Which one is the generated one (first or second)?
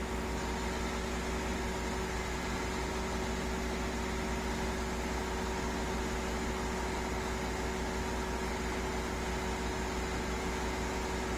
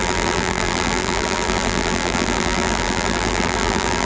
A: second